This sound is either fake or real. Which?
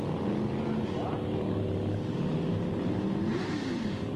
real